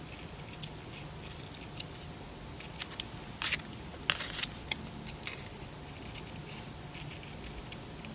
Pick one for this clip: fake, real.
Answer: real